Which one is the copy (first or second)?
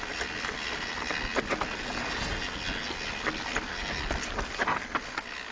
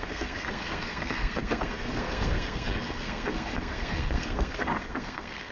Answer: second